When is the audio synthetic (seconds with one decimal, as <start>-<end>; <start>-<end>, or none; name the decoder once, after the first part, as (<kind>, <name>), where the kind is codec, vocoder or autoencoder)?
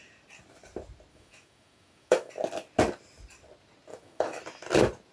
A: 1.1-2.3 (autoencoder, DAC-VAE); 3.9-4.4